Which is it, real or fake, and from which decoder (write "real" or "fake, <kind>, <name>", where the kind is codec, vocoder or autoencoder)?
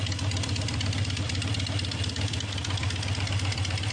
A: fake, vocoder, BigVGAN v2